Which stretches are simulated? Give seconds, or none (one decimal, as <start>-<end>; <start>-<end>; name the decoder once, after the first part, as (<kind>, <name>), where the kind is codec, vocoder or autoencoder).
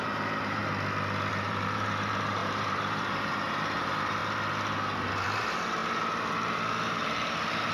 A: 0.0-0.6 (vocoder, BigVGAN v2); 1.3-4.2; 5.1-7.7